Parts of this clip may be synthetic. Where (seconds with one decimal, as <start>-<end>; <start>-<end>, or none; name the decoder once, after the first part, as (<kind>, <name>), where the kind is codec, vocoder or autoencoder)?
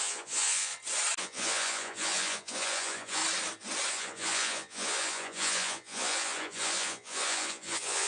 0.0-0.7 (vocoder, Vocos); 1.2-3.2; 3.9-8.1